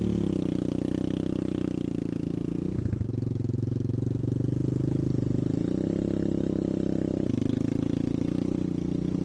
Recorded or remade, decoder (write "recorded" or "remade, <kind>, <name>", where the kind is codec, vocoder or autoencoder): recorded